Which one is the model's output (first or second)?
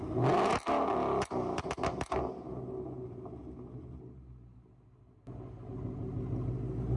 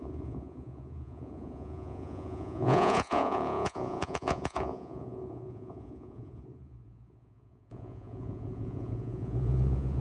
second